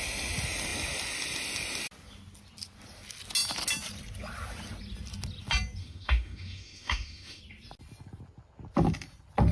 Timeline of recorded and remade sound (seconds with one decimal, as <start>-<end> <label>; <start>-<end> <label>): 0.0-5.8 recorded; 5.8-7.4 remade; 7.4-9.5 recorded